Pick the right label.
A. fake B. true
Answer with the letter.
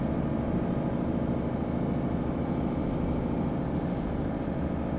B